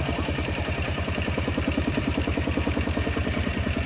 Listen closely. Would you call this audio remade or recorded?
remade